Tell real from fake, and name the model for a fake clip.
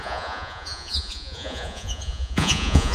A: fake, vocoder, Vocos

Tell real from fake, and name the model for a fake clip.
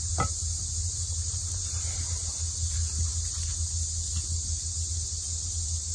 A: real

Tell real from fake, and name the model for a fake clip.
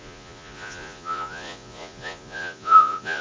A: fake, vocoder, Vocos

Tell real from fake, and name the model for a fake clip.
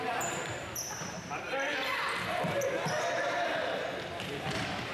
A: fake, vocoder, BigVGAN v2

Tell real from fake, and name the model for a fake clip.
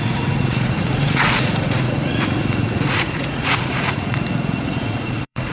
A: fake, vocoder, Vocos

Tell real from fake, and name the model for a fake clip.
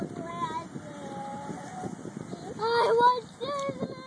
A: real